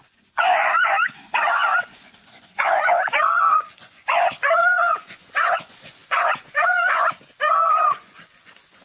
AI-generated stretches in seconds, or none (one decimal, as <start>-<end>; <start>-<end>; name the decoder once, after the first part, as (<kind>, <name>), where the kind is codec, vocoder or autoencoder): 0.0-8.8 (vocoder, Vocos)